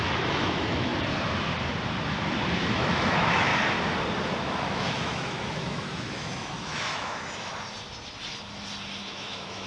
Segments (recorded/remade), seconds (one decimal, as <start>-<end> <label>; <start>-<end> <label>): 0.0-0.9 remade; 0.9-2.7 recorded; 2.7-3.5 remade; 3.5-4.4 recorded; 4.4-7.5 remade; 7.5-9.0 recorded; 9.0-9.7 remade